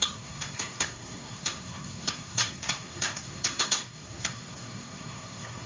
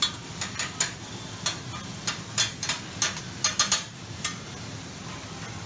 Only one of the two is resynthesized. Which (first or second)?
first